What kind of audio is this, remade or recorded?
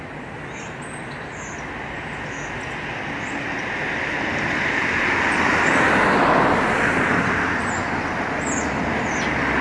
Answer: recorded